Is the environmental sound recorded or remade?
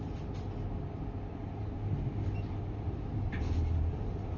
recorded